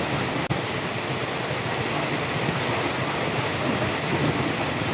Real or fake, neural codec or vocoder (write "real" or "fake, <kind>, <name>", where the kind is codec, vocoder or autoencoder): real